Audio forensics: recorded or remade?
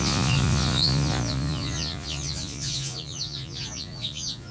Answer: remade